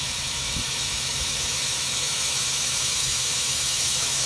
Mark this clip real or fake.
fake